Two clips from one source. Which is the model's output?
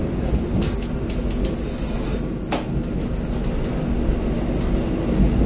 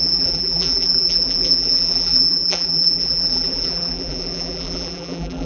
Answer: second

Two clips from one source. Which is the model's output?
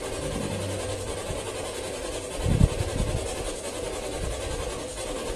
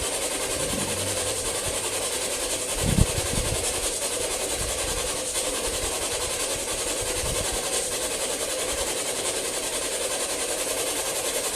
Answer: second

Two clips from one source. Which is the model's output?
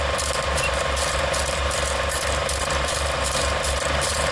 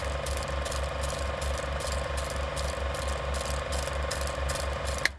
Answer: first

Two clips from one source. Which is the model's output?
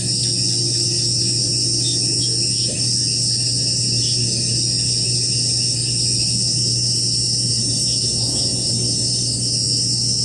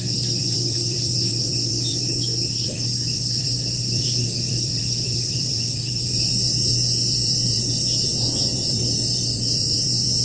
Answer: second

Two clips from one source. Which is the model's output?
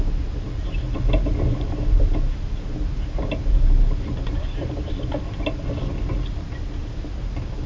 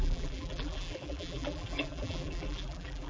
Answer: second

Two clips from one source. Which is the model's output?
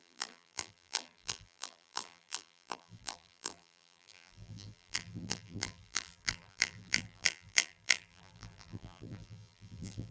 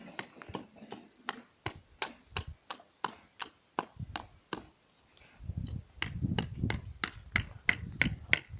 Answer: first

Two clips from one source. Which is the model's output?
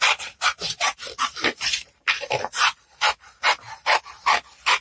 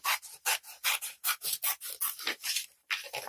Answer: first